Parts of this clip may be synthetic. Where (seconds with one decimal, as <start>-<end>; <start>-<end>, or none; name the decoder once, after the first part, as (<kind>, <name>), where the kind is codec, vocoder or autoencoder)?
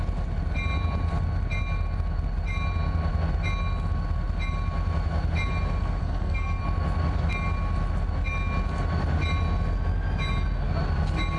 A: 6.0-6.6 (codec, SNAC)